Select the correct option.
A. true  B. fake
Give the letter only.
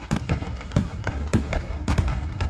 B